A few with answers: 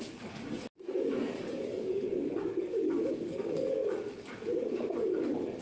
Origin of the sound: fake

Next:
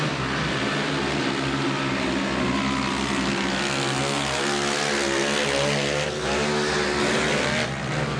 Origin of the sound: real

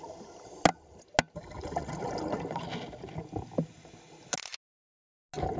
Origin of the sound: real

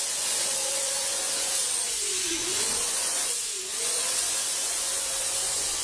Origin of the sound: fake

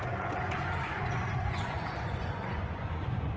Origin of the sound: fake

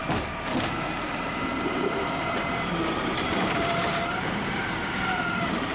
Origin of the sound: fake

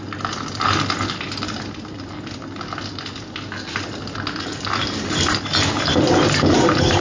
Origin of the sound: real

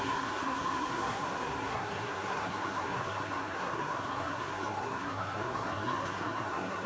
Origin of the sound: fake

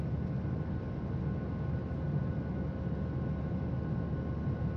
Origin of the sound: real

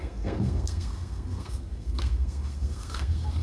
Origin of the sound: fake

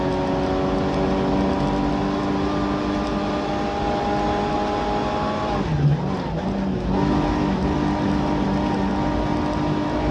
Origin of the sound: real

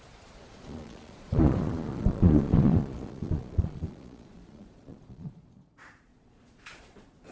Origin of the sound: fake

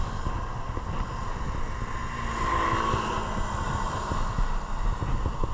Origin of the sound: real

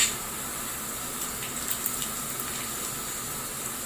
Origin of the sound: real